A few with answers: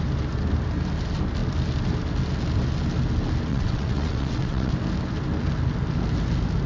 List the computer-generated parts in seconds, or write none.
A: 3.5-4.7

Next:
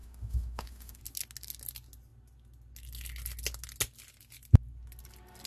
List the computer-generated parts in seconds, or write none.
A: 0.0-1.0

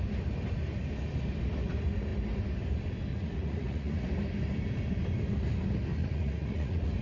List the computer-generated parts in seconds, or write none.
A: 3.1-4.1; 6.0-7.0

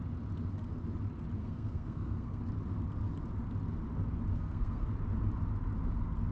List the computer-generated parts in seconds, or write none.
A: 1.4-2.4; 4.3-4.9

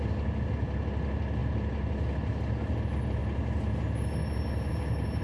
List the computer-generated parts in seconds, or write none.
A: none

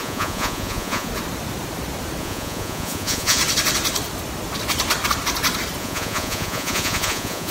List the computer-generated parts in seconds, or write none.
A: 0.0-1.1; 2.2-3.4; 5.8-7.5